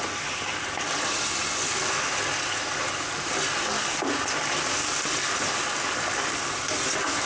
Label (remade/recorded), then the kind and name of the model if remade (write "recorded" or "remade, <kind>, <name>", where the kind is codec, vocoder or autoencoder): recorded